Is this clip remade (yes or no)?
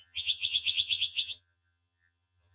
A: yes